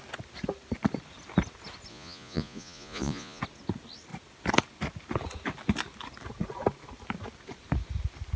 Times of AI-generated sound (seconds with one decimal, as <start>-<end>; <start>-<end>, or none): 1.9-3.4

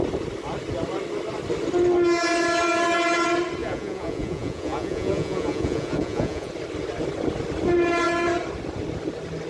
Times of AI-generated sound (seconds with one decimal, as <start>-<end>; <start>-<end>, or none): 3.6-6.5

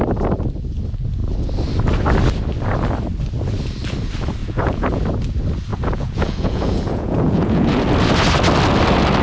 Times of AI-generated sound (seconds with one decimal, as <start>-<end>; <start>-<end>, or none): 4.4-5.0; 5.7-7.8

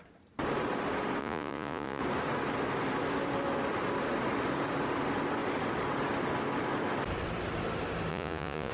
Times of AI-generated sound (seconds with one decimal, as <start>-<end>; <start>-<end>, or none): 1.2-2.0; 8.1-8.7